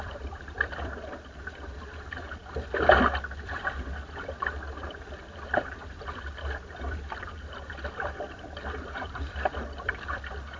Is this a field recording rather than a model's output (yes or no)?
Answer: no